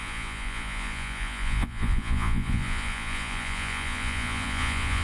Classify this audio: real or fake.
fake